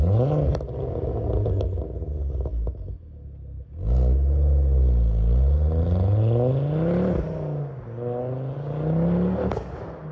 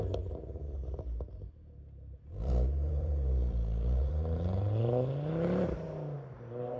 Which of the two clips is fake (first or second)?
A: second